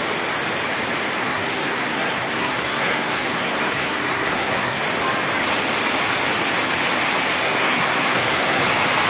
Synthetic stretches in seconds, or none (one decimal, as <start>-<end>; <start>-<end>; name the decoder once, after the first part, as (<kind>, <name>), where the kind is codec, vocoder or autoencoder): 1.2-4.8 (codec, SNAC); 7.4-8.6